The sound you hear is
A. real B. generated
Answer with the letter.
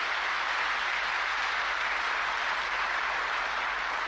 A